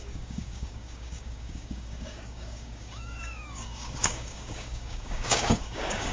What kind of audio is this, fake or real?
fake